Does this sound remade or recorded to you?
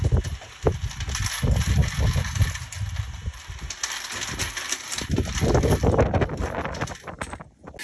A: recorded